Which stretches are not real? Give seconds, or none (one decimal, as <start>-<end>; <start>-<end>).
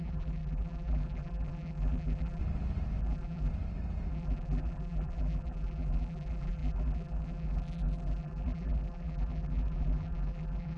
0.0-2.4; 3.0-3.5; 4.1-10.8